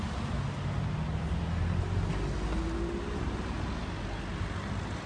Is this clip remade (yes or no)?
no